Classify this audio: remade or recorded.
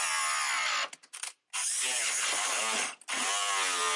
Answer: recorded